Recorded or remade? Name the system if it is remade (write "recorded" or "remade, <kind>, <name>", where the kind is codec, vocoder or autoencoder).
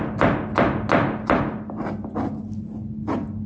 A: recorded